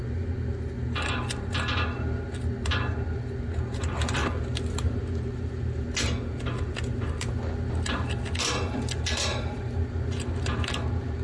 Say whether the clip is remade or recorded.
recorded